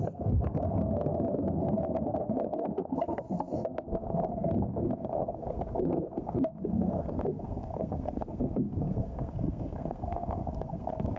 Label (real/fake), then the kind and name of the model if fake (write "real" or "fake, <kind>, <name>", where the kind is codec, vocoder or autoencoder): fake, codec, SNAC